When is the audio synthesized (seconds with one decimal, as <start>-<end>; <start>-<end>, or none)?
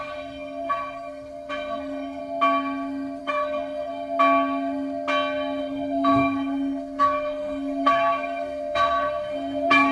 0.0-2.2; 3.2-3.9; 5.6-9.9